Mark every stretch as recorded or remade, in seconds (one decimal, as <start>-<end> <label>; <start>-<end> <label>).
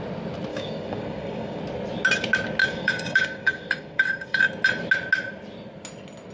0.0-0.5 recorded; 0.5-1.6 remade; 1.6-2.6 recorded; 2.6-4.4 remade; 4.4-6.3 recorded